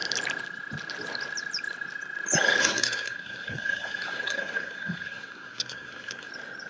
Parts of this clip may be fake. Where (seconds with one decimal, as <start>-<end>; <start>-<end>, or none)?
2.6-6.3